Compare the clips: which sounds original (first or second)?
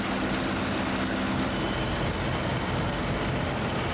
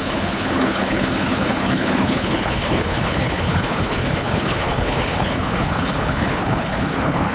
first